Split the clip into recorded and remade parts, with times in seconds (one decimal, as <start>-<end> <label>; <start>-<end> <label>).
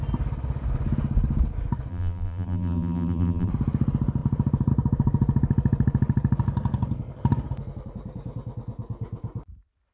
0.0-1.9 recorded; 1.9-3.5 remade; 3.5-9.9 recorded